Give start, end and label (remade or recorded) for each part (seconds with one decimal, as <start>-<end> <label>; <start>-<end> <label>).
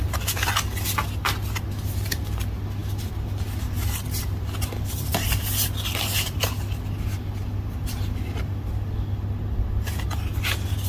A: 0.0-10.9 recorded